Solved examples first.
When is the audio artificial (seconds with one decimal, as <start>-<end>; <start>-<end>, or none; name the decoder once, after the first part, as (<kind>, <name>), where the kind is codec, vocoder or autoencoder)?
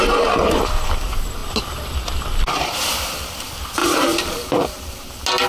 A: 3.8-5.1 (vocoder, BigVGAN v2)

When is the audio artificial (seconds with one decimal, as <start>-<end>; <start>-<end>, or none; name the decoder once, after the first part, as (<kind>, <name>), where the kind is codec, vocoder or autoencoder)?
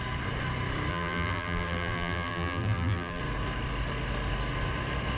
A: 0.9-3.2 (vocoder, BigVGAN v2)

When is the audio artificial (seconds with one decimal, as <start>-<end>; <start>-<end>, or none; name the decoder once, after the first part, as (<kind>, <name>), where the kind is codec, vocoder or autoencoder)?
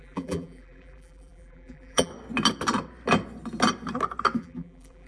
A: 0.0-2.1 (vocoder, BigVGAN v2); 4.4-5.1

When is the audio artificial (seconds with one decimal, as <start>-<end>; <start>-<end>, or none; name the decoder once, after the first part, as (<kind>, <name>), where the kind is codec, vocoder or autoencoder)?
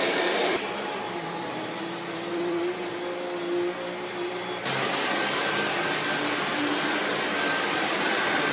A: 0.0-2.8 (vocoder, BigVGAN v2); 7.6-8.5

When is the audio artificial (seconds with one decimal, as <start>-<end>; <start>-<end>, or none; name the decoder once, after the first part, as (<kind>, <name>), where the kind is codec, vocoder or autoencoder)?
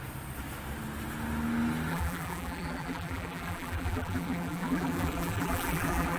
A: 1.9-6.2 (vocoder, BigVGAN v2)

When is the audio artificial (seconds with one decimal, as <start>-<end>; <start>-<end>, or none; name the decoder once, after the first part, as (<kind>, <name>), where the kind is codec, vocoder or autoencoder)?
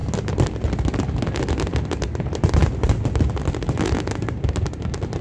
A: 0.0-0.5 (vocoder, BigVGAN v2)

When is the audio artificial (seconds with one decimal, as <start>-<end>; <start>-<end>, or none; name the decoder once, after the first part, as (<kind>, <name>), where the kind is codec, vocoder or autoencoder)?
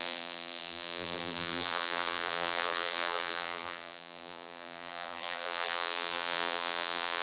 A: 0.0-7.2 (vocoder, BigVGAN v2)